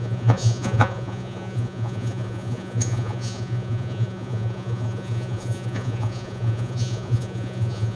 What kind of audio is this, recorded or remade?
remade